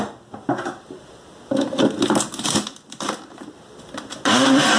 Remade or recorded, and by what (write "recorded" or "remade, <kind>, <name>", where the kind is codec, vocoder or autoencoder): recorded